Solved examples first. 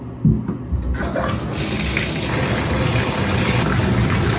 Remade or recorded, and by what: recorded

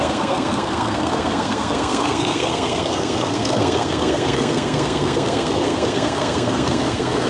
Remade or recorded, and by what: remade, codec, SNAC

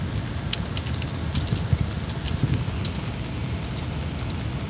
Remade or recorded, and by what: recorded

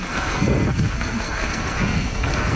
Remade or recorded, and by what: remade, codec, SNAC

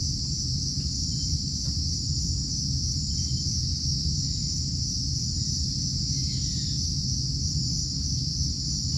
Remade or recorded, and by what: recorded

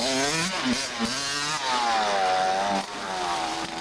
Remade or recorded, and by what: recorded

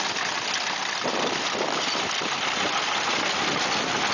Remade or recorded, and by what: remade, vocoder, BigVGAN v2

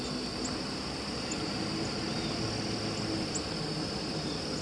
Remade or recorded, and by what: recorded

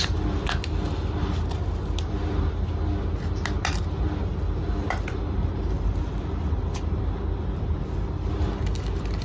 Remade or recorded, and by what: recorded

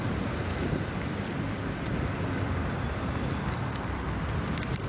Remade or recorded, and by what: remade, vocoder, BigVGAN v2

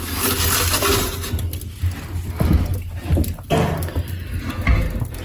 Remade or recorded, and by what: recorded